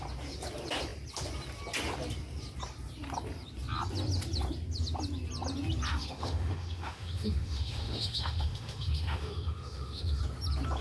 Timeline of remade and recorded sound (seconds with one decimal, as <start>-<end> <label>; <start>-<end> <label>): 0.0-5.9 recorded; 5.9-10.2 remade; 10.2-10.8 recorded